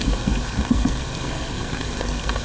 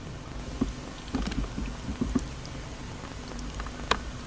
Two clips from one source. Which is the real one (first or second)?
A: second